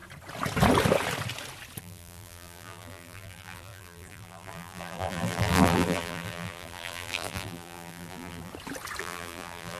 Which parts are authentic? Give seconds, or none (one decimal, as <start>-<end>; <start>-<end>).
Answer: 0.0-1.8; 8.5-9.0